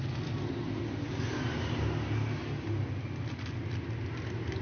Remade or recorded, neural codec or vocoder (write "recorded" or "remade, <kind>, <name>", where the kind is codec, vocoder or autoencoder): recorded